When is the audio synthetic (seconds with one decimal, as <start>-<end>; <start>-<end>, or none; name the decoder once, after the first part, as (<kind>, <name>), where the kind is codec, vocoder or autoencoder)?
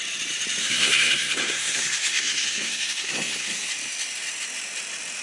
0.6-3.7 (codec, SNAC)